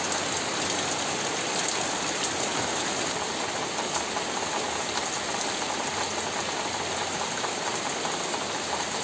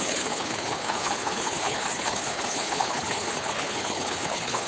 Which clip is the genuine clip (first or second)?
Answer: first